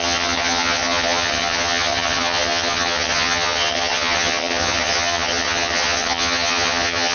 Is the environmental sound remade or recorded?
remade